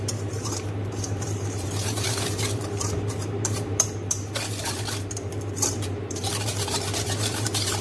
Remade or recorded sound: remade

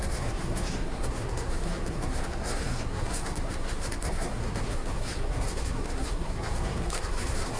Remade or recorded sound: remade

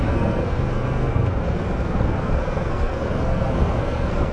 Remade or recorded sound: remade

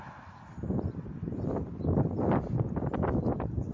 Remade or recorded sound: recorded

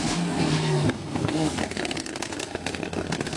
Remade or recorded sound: remade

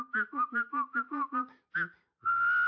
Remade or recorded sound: recorded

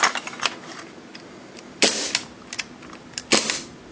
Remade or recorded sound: recorded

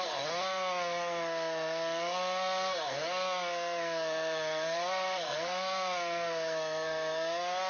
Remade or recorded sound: remade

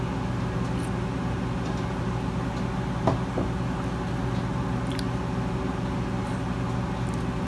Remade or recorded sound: recorded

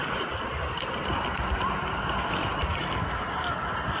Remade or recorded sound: recorded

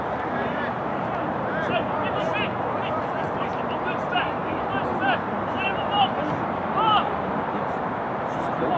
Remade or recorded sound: remade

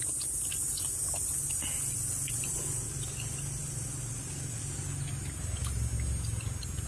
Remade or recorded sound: recorded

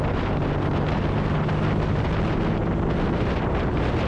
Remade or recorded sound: recorded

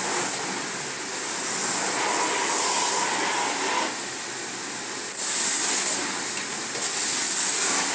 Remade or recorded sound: recorded